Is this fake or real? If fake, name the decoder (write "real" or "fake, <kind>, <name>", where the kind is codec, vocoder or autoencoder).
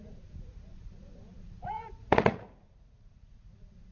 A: fake, vocoder, Vocos